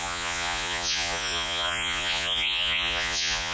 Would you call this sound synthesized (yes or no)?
yes